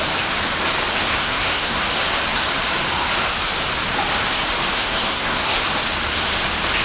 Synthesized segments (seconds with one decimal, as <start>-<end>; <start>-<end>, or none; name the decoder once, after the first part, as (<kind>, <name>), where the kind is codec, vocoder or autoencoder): 1.1-1.8 (codec, SNAC); 4.8-5.6

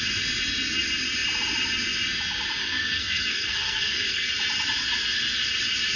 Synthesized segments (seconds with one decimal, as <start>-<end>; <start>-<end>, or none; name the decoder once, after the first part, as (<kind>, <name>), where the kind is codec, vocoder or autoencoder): 2.6-4.3 (codec, SNAC)

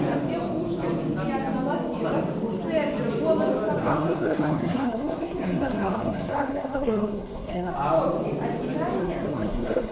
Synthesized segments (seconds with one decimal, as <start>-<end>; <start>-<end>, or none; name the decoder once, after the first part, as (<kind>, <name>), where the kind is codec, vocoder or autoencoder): 3.8-7.7 (codec, SNAC); 9.0-9.9

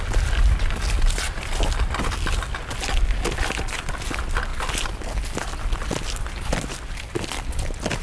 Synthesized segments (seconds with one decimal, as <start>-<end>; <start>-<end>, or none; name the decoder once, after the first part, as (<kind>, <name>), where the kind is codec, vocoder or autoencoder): none